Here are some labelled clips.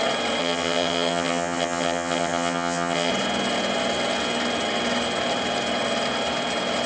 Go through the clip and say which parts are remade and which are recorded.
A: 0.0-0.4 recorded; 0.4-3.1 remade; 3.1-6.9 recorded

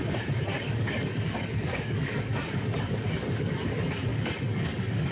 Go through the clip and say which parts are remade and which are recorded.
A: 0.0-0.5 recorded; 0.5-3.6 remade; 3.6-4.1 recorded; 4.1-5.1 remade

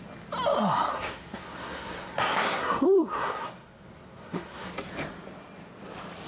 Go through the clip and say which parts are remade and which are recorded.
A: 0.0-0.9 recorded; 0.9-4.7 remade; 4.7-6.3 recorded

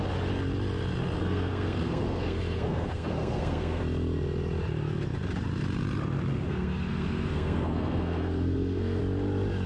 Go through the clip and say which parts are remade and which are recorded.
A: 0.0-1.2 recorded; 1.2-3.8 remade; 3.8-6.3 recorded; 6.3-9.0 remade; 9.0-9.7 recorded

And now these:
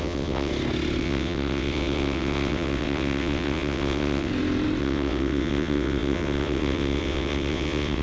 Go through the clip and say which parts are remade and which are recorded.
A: 0.0-0.5 remade; 0.5-1.0 recorded; 1.0-4.3 remade; 4.3-4.8 recorded; 4.8-8.0 remade

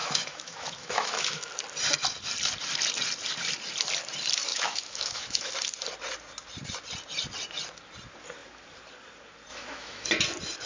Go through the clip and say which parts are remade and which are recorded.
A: 0.0-1.5 remade; 1.5-4.5 recorded; 4.5-5.5 remade; 5.5-9.5 recorded; 9.5-10.1 remade; 10.1-10.7 recorded

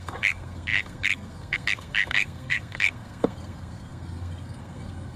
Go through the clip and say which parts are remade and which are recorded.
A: 0.0-5.2 remade